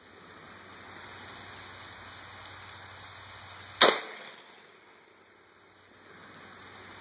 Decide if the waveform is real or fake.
real